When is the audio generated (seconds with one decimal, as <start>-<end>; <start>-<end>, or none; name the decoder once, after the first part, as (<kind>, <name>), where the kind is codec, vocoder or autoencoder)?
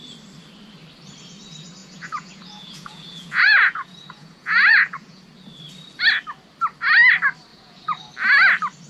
1.8-5.2 (vocoder, Vocos); 7.5-8.0